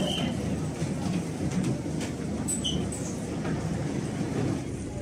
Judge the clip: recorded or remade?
recorded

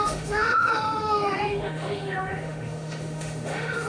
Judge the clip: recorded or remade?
remade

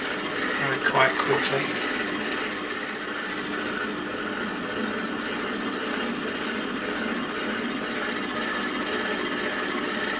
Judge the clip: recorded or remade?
recorded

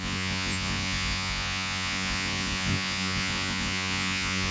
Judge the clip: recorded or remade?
remade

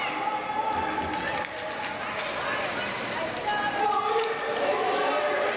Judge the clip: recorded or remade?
recorded